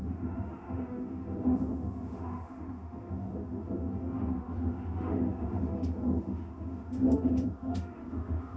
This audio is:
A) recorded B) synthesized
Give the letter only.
B